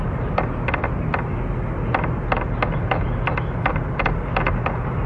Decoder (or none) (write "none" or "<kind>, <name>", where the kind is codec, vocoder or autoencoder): none